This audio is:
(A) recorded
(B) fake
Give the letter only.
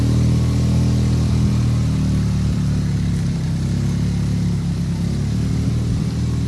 A